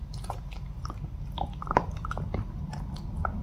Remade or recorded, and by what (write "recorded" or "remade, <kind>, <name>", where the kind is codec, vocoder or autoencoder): recorded